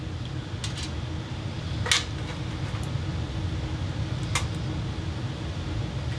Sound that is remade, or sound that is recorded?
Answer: recorded